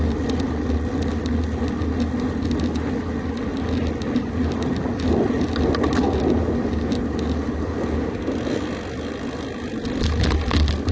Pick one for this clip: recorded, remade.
recorded